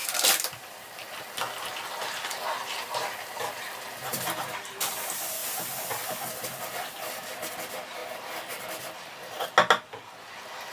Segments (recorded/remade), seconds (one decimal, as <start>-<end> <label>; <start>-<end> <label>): 0.0-1.0 remade; 1.0-2.8 recorded; 2.8-5.4 remade; 5.4-7.5 recorded; 7.5-8.0 remade; 8.0-10.7 recorded